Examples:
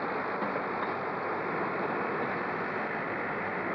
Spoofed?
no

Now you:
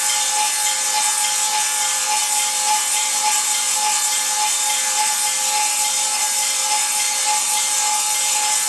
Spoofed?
no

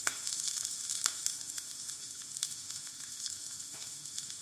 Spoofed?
yes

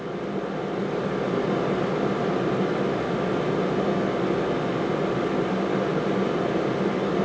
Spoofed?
no